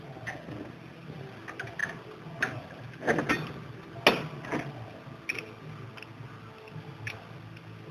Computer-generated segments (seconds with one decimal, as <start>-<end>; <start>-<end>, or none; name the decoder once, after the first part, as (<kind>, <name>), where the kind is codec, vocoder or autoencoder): none

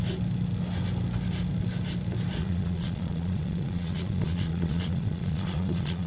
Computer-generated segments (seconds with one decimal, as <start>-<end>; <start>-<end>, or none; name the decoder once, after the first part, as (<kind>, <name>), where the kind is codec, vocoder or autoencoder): 2.4-6.1 (vocoder, Vocos)

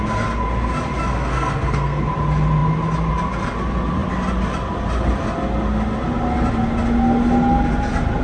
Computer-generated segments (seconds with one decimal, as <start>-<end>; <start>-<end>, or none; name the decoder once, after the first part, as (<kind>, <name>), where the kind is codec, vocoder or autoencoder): 1.1-2.0 (codec, SNAC)